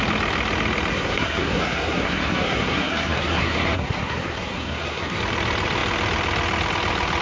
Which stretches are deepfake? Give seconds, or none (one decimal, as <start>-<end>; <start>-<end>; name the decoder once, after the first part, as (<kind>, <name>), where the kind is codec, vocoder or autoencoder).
0.9-5.2 (codec, SNAC)